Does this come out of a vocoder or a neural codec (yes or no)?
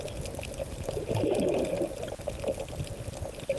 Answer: no